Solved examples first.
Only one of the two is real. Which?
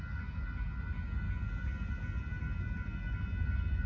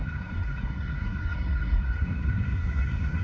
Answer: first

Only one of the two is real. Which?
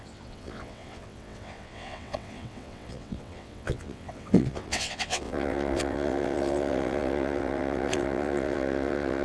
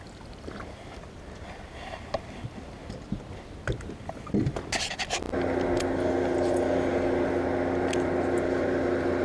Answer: second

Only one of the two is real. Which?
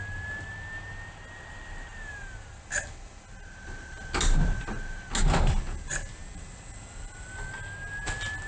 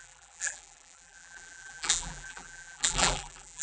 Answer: first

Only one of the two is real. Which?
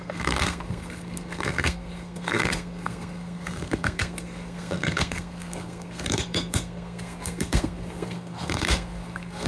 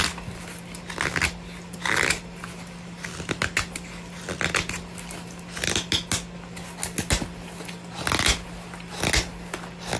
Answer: second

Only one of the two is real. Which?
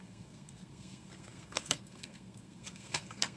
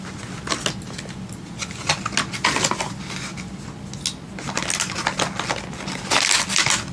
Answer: second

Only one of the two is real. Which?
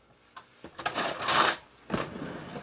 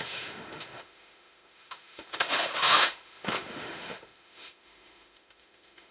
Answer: first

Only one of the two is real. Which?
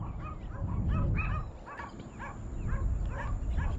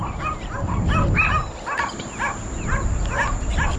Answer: first